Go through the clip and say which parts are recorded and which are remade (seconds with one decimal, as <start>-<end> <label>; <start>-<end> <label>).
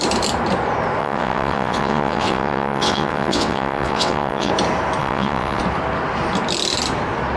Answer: 0.0-1.0 recorded; 1.0-4.5 remade; 4.5-5.0 recorded; 5.0-5.6 remade; 5.6-7.4 recorded